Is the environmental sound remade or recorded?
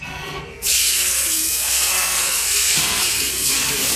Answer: remade